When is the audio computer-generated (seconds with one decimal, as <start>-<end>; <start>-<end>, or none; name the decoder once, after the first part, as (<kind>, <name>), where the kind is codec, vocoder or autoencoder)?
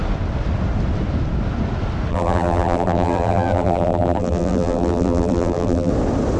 2.1-5.9 (vocoder, BigVGAN v2)